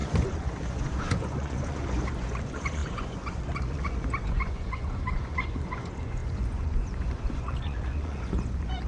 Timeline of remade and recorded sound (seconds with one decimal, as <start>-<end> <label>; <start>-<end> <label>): 0.0-8.9 remade